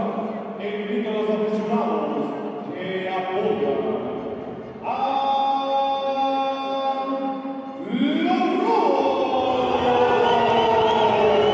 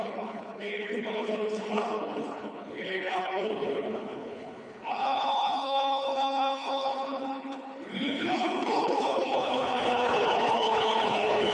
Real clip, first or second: first